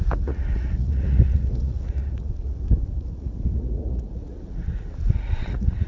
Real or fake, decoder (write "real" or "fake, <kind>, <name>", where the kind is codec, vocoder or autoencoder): fake, vocoder, Vocos